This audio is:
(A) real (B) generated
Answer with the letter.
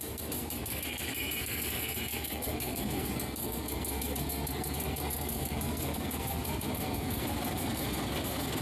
B